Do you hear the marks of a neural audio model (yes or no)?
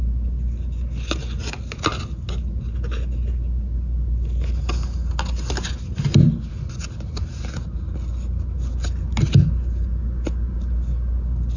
no